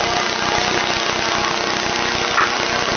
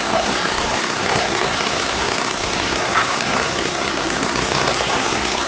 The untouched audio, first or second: first